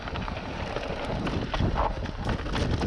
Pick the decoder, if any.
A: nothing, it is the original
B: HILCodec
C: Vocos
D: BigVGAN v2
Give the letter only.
A